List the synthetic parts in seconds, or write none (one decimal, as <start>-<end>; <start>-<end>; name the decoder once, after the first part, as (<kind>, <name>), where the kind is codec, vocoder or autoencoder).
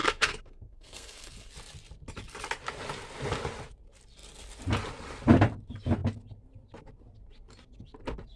0.0-1.5 (codec, SNAC)